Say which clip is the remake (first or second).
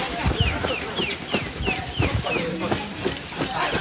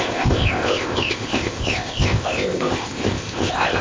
second